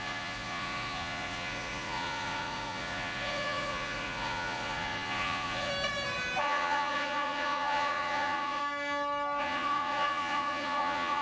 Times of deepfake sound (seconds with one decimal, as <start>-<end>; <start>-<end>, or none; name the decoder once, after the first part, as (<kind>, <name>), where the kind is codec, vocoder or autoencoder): 0.0-5.7 (vocoder, Vocos); 6.4-8.6; 9.4-11.2